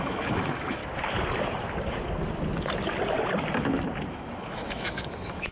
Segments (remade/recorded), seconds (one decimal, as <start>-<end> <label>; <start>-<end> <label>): 0.0-0.8 remade; 0.8-4.1 recorded; 4.1-5.5 remade

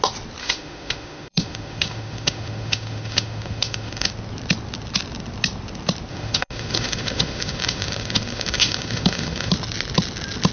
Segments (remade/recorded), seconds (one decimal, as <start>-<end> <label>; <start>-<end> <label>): 0.0-0.4 recorded; 0.4-4.1 remade; 4.1-6.1 recorded; 6.1-9.5 remade; 9.5-10.5 recorded

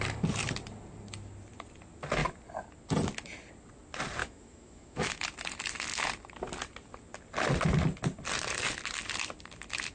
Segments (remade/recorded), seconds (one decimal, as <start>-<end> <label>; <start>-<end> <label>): 0.0-4.2 recorded; 4.2-5.2 remade; 5.2-9.9 recorded

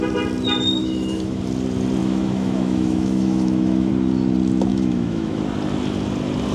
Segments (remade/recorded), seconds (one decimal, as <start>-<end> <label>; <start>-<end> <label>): 0.0-0.8 recorded; 0.8-1.4 remade; 1.4-2.0 recorded; 2.0-3.9 remade; 3.9-4.7 recorded; 4.7-5.4 remade; 5.4-6.5 recorded

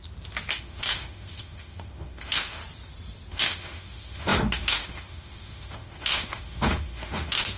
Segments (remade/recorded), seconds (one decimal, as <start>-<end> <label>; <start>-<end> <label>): 0.0-0.5 recorded; 0.5-2.6 remade; 2.6-3.3 recorded; 3.3-7.6 remade

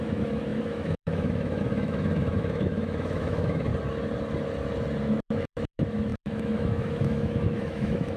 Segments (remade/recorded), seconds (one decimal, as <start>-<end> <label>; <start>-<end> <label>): 0.0-3.7 remade; 3.7-5.0 recorded; 5.0-8.2 remade